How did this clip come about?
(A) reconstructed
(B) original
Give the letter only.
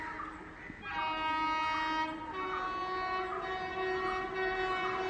B